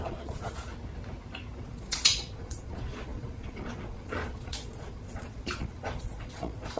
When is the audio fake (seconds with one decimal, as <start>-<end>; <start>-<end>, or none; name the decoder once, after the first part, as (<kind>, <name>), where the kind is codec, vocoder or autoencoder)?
0.0-0.7 (vocoder, Vocos); 1.6-6.8